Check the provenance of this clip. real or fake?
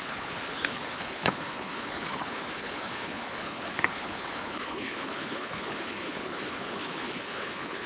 fake